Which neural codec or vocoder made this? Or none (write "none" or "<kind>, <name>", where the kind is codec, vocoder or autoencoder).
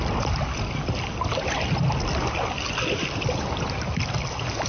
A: none